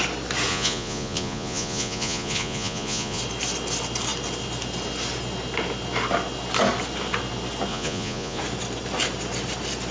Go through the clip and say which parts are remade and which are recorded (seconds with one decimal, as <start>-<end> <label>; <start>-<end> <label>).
0.0-0.5 recorded; 0.5-3.2 remade; 3.2-7.7 recorded; 7.7-8.4 remade; 8.4-9.9 recorded